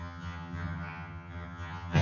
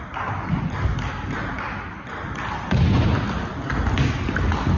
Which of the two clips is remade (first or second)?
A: first